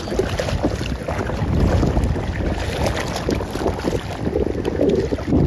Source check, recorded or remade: recorded